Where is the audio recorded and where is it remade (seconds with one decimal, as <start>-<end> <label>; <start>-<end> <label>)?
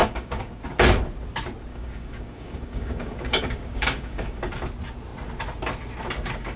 0.0-0.6 remade; 0.6-1.7 recorded; 1.7-4.4 remade; 4.4-6.6 recorded